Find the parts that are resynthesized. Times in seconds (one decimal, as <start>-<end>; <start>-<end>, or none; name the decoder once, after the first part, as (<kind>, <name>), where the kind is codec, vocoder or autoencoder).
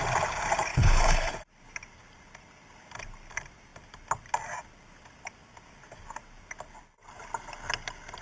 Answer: 0.7-1.3 (codec, HILCodec)